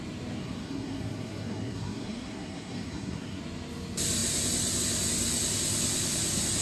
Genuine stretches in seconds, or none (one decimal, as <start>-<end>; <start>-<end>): 0.0-0.4; 3.4-6.6